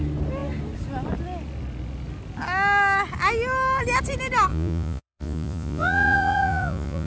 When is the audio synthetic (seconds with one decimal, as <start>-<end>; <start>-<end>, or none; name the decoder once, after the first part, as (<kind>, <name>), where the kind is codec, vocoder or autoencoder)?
4.5-7.1 (vocoder, Vocos)